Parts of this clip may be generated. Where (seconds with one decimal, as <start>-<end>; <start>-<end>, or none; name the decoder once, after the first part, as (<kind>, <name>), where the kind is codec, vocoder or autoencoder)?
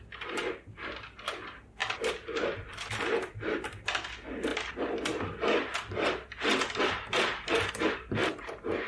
1.8-3.3 (vocoder, BigVGAN v2); 8.2-8.9